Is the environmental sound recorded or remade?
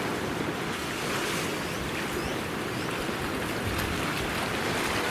recorded